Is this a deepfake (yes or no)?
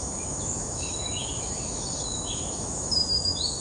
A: yes